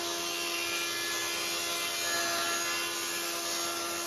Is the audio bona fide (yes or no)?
yes